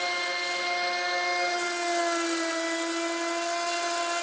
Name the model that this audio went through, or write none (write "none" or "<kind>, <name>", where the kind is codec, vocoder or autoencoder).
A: none